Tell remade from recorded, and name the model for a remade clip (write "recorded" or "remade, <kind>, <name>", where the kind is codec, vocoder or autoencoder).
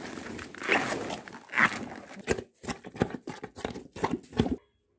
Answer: recorded